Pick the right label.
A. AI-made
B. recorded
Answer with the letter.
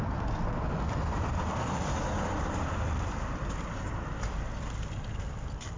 A